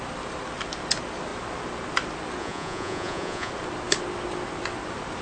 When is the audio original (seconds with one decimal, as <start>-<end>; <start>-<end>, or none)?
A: 0.0-2.4; 3.5-5.2